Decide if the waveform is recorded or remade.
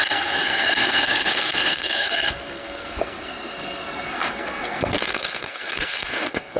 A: remade